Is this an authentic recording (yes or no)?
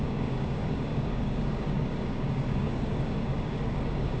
no